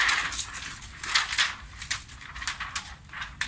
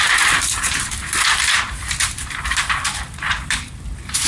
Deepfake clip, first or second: second